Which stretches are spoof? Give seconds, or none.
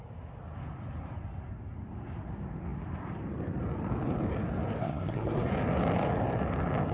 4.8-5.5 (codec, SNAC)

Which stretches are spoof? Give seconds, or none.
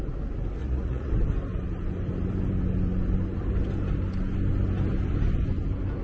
0.6-1.1 (vocoder, Vocos)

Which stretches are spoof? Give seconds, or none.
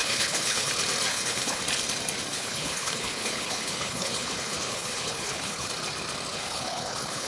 0.0-0.7 (codec, HILCodec); 1.1-1.6; 2.3-5.7; 6.3-7.3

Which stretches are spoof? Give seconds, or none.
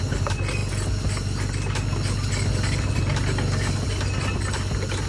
none